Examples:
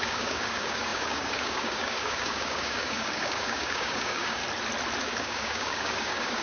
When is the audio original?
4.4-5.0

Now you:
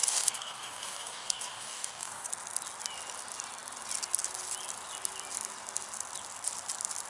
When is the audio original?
2.3-7.1

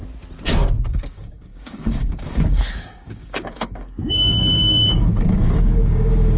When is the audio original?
0.0-0.9

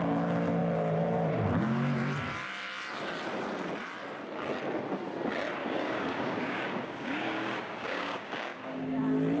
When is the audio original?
0.0-5.6; 9.0-9.4

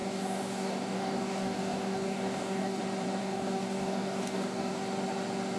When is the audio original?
2.8-3.2; 4.7-5.6

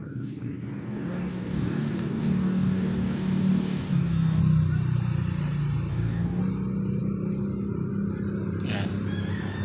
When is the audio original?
4.4-5.9; 6.4-9.6